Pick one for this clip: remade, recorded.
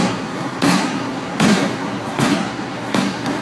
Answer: remade